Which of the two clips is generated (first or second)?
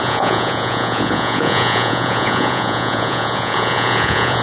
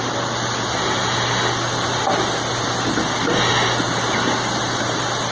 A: first